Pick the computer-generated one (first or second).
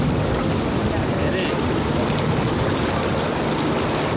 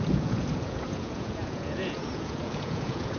second